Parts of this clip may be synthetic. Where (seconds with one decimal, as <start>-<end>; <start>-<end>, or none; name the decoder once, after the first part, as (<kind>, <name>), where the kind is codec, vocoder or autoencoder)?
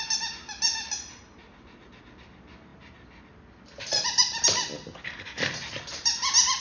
none